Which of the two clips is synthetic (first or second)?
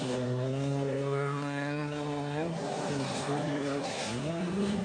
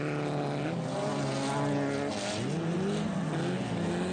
first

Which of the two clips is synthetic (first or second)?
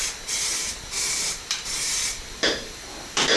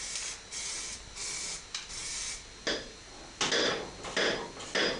first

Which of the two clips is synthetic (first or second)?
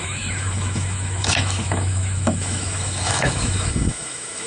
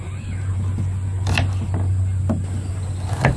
first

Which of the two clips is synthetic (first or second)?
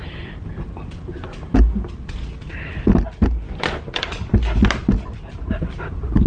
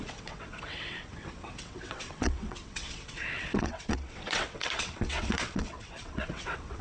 second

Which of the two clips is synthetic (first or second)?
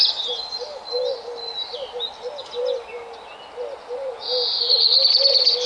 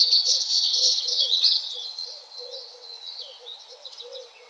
second